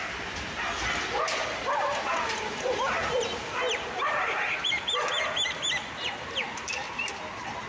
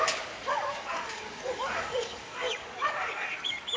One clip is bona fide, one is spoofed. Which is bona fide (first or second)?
first